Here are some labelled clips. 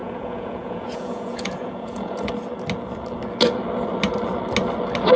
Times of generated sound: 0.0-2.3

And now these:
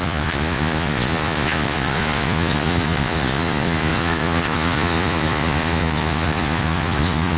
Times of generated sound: 0.0-7.4

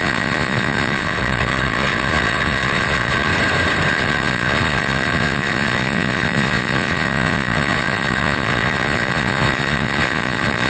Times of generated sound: 0.0-3.3; 3.9-10.7

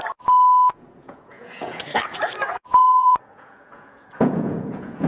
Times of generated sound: 0.7-1.8; 2.7-5.1

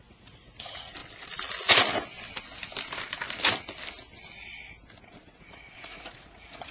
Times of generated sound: 0.0-1.0; 5.0-6.7